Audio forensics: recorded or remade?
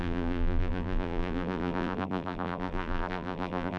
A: remade